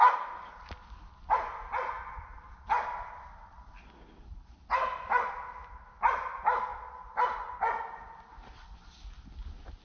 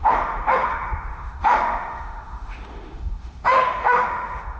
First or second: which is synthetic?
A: second